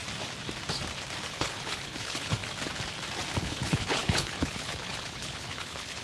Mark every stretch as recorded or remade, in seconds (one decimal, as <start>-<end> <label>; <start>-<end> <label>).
0.0-1.3 recorded; 1.3-2.4 remade; 2.4-3.4 recorded; 3.4-6.0 remade